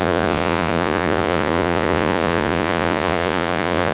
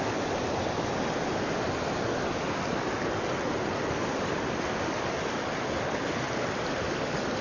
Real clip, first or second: second